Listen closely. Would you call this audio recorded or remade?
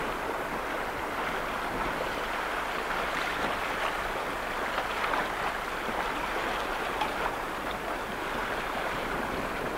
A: recorded